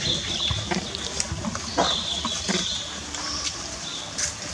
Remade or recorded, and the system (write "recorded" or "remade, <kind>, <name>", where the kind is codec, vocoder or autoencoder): recorded